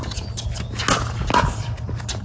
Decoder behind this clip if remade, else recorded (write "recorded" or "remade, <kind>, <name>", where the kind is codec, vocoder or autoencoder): recorded